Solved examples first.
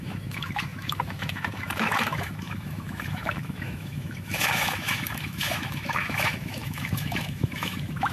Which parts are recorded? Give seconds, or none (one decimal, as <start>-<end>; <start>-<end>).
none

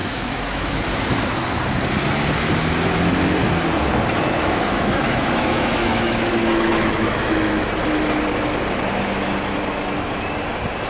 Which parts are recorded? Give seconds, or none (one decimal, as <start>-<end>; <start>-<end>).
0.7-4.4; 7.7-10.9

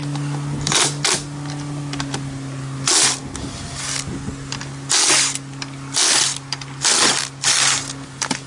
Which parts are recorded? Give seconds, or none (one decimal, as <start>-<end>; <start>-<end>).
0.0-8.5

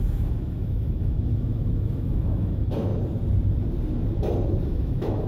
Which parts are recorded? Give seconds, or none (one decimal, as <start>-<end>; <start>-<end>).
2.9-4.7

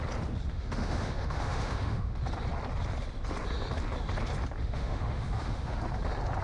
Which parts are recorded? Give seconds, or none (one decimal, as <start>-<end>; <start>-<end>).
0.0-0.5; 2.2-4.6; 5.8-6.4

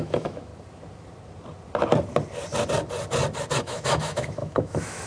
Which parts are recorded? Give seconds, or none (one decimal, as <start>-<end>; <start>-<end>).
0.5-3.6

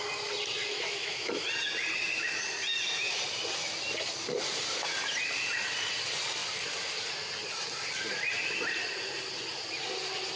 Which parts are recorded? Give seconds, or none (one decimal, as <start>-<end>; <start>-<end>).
0.0-0.7; 1.3-10.4